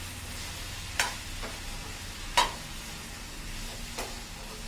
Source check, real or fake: real